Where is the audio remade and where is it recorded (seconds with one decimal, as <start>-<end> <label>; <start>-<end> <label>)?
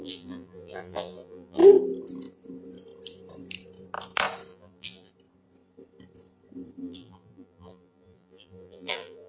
0.0-1.6 remade; 1.6-4.5 recorded; 4.5-5.1 remade; 5.1-6.8 recorded; 6.8-9.3 remade